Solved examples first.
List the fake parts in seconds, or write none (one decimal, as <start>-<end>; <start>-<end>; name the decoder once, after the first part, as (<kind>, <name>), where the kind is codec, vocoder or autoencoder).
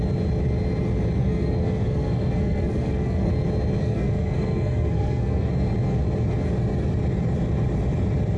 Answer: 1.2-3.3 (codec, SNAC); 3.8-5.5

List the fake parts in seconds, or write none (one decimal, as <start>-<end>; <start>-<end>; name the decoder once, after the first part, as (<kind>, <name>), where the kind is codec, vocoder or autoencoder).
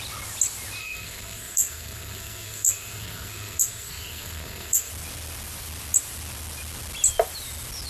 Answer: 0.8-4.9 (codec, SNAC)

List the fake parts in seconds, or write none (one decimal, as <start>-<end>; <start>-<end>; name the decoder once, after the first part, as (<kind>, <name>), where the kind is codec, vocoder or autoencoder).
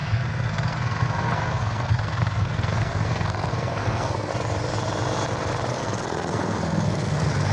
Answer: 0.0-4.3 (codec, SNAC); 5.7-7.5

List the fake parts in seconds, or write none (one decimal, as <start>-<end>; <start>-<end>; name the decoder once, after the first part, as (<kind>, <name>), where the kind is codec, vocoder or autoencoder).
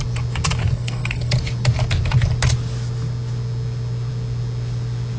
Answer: 0.6-1.3 (codec, SNAC)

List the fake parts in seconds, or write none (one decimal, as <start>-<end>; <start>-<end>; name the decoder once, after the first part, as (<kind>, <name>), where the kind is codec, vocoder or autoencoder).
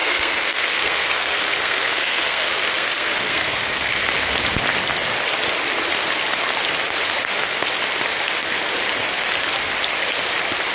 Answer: 0.0-4.3 (codec, SNAC)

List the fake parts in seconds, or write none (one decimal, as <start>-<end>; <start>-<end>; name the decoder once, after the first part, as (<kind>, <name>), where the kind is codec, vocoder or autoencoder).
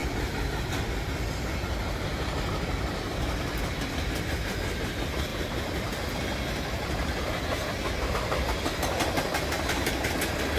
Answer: none